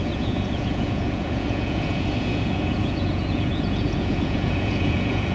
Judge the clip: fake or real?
fake